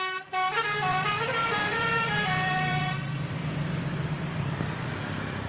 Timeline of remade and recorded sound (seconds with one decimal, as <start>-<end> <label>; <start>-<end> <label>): 0.0-0.9 recorded; 0.9-4.2 remade; 4.2-5.5 recorded